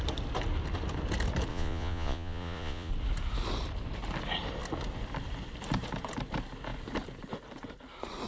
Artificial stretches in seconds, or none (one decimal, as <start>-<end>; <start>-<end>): 1.5-2.9